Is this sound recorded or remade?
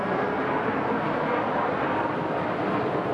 recorded